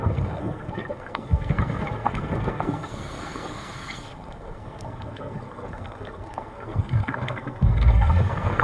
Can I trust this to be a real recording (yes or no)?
no